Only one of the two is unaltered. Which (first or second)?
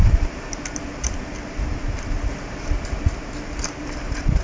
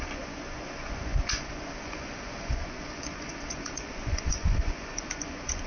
first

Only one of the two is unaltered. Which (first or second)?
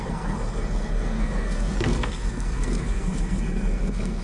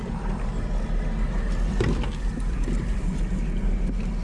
second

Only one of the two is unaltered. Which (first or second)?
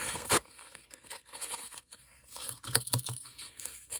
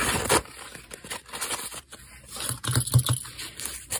second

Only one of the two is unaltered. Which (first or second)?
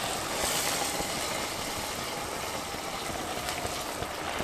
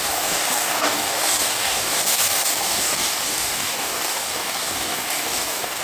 first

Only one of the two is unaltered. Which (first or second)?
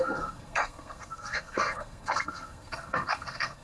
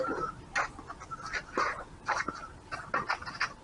second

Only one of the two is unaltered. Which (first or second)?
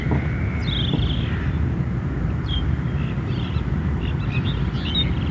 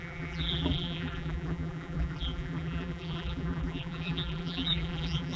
first